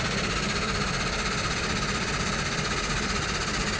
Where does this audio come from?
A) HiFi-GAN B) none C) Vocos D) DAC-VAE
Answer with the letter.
B